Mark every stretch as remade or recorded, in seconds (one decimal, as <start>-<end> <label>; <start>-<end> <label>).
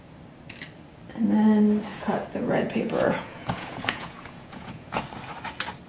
0.0-1.9 recorded; 1.9-5.0 remade; 5.0-5.9 recorded